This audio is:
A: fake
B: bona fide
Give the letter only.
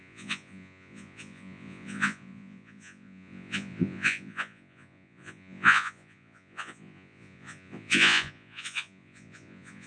A